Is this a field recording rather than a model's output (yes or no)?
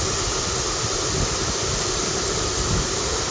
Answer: yes